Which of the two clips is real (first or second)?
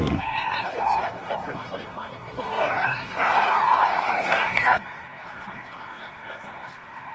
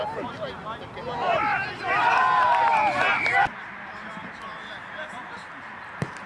second